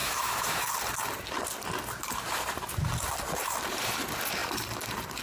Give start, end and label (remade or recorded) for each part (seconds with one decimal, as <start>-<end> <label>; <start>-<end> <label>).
0.0-0.7 remade; 0.7-5.2 recorded